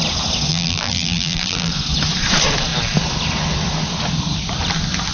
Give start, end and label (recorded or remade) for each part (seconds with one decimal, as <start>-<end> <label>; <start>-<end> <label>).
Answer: 0.0-0.5 recorded; 0.5-1.7 remade; 1.7-5.1 recorded